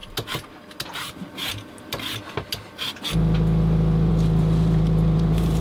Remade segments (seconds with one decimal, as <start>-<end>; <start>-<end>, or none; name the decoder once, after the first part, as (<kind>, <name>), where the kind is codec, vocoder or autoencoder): 4.1-5.6 (vocoder, BigVGAN v2)